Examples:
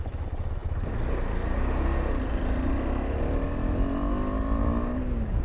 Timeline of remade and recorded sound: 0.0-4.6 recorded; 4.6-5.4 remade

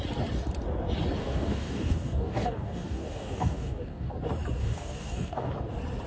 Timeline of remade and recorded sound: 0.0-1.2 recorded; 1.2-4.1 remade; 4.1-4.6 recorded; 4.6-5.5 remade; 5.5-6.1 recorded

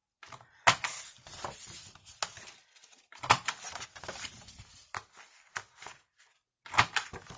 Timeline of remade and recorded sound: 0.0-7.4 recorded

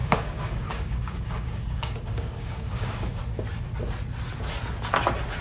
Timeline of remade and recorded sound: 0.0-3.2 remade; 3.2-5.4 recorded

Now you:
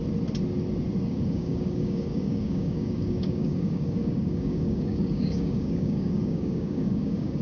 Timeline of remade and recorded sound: 0.0-1.0 recorded; 1.0-7.4 remade

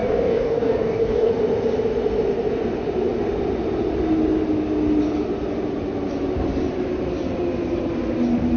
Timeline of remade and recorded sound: 0.0-1.3 remade; 1.3-8.6 recorded